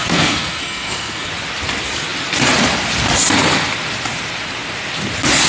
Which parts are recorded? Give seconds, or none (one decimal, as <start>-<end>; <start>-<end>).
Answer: 1.3-5.5